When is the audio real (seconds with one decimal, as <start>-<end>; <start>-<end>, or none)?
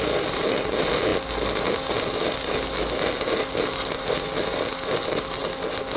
0.0-6.0